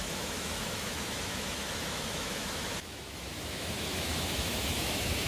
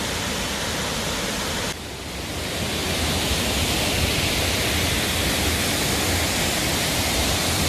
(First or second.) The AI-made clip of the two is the first